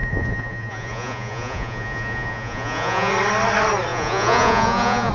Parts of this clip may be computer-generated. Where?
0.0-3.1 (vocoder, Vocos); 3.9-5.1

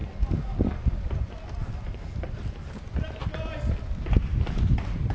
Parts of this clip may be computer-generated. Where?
none

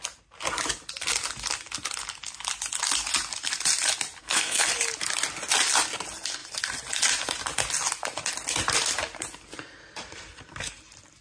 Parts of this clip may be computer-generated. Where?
4.2-4.7 (codec, SNAC)

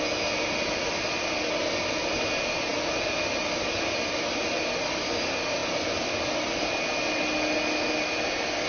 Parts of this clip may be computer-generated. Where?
none

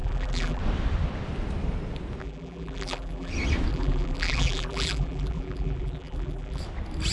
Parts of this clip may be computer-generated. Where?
0.0-0.6 (vocoder, BigVGAN v2); 2.2-3.3; 3.7-6.6

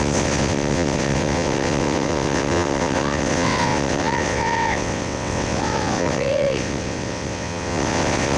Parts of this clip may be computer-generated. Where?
0.0-8.4 (vocoder, WaveNeXt)